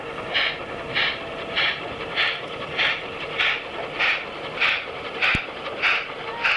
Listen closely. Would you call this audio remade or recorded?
recorded